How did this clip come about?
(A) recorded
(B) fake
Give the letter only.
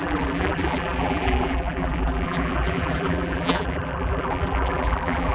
B